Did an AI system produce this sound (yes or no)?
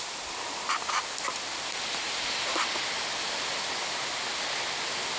no